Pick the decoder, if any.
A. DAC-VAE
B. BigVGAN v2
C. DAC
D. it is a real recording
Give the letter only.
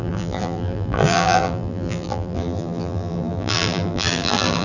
B